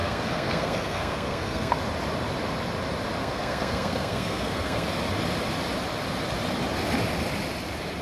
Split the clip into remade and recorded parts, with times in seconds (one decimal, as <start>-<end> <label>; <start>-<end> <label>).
0.0-1.7 remade; 1.7-3.2 recorded; 3.2-4.9 remade; 4.9-8.0 recorded